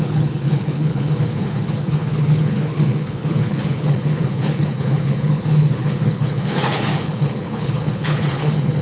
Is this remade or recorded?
remade